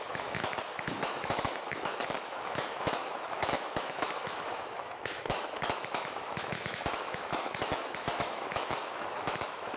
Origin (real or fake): fake